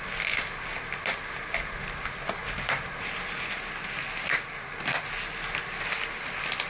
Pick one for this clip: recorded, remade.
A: recorded